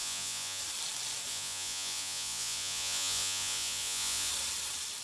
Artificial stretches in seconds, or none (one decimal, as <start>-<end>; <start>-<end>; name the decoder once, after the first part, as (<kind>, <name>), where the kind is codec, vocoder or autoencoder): 0.0-0.6 (vocoder, Vocos); 1.3-4.3